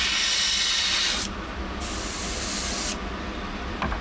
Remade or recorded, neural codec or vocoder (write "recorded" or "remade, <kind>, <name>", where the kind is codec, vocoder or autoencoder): recorded